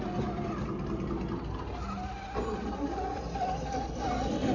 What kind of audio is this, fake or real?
real